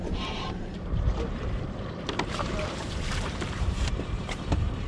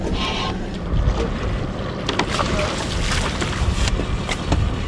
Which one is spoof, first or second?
first